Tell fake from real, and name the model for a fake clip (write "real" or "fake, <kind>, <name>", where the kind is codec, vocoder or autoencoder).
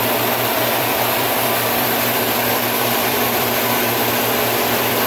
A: fake, vocoder, BigVGAN v2